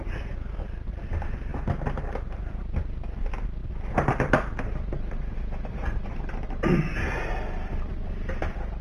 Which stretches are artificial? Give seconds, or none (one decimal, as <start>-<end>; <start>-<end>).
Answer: none